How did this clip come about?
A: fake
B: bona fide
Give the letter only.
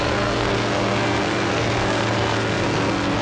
A